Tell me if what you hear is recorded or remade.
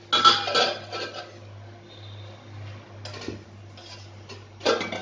recorded